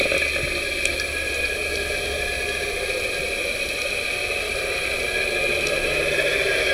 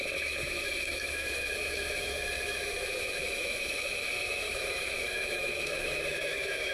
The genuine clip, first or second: first